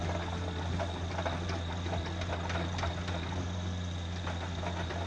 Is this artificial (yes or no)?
no